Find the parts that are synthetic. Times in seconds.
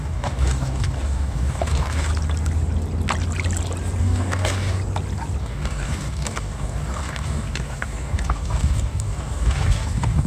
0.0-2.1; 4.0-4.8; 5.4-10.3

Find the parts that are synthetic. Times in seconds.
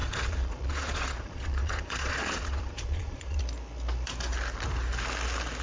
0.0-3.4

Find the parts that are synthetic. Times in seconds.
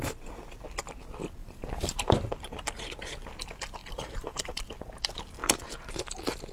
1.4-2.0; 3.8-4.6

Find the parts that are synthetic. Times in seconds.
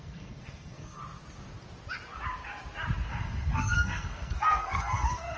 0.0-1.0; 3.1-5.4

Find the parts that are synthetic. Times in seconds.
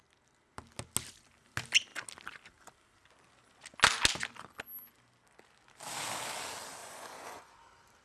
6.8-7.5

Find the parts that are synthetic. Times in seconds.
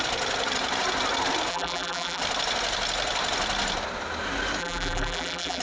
1.5-2.2; 4.6-5.6